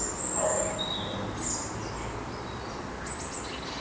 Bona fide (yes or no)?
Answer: yes